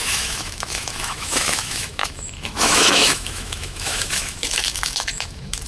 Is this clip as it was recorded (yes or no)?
no